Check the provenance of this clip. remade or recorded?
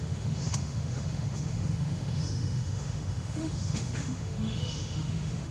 remade